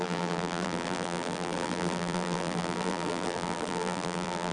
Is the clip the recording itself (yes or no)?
no